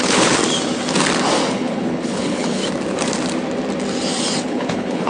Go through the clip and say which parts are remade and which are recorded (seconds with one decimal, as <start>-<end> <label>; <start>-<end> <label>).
0.0-0.4 remade; 0.4-1.5 recorded; 1.5-2.6 remade; 2.6-4.4 recorded; 4.4-5.1 remade